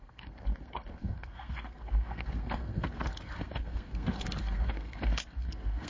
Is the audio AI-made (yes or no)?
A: yes